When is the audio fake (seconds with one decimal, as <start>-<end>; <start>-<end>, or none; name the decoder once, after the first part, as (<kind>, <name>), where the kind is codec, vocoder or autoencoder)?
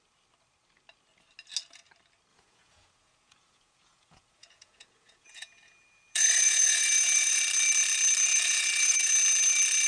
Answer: 2.3-7.4 (vocoder, Vocos); 8.3-9.1